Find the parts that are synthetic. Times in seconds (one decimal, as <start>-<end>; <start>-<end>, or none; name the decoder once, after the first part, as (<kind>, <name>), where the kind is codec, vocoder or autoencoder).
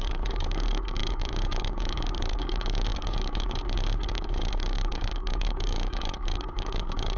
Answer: 0.0-7.2 (codec, DAC)